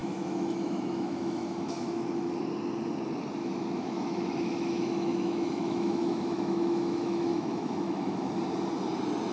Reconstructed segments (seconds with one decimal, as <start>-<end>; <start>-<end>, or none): 0.0-2.3; 3.4-8.3